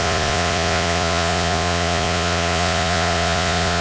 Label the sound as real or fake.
fake